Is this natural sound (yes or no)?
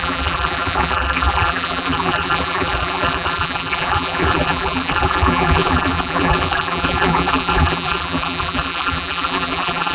no